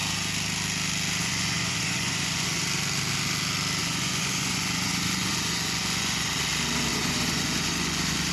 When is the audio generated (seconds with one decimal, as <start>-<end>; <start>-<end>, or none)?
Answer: 1.2-2.6; 3.8-6.3; 6.9-8.3